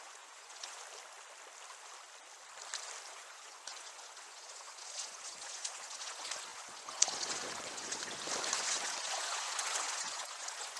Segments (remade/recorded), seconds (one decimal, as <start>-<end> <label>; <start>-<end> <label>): 0.0-0.8 remade; 0.8-3.1 recorded; 3.1-10.8 remade